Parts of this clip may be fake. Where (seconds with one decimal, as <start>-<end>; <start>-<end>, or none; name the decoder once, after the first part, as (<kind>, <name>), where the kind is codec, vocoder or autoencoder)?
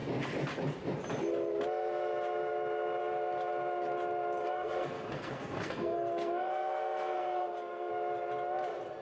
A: 4.4-7.9 (codec, SNAC)